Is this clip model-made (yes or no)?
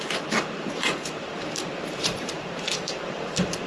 yes